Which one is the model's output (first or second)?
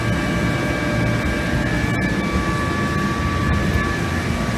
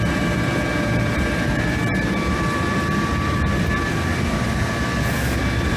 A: second